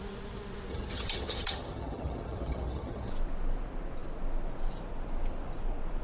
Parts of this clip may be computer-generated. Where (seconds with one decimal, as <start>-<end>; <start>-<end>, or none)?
0.7-3.1